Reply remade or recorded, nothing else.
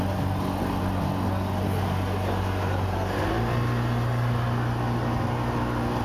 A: recorded